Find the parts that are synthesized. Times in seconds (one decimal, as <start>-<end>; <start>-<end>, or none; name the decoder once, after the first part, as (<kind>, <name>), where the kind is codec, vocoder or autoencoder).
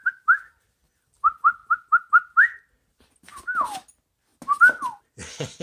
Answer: none